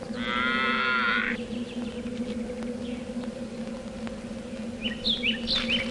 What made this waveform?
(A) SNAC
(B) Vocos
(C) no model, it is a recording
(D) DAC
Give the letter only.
C